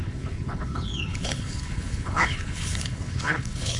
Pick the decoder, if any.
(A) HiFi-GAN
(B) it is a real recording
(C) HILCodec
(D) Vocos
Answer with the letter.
C